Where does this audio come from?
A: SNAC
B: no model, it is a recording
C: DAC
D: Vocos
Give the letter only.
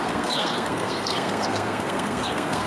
A